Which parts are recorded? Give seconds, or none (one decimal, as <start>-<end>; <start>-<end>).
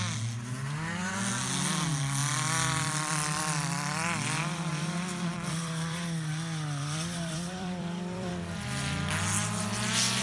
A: 0.0-4.7; 8.3-10.2